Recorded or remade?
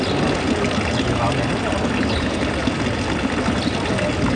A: recorded